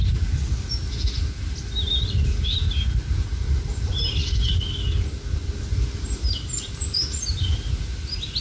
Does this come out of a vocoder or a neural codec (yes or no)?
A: no